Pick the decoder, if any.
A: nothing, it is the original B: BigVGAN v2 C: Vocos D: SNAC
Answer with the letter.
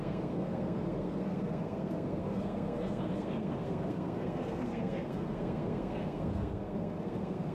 D